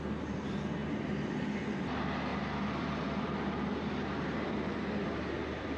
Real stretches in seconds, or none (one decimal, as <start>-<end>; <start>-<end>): 0.0-2.3